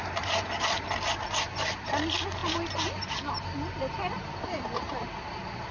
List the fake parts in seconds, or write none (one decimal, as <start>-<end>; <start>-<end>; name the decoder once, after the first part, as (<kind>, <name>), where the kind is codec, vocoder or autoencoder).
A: none